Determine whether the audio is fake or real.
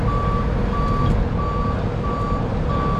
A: real